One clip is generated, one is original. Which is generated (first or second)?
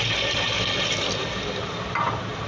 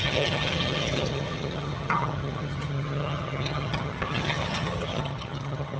second